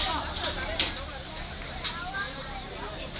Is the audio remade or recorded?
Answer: recorded